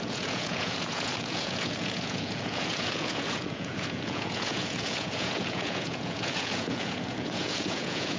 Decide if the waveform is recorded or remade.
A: remade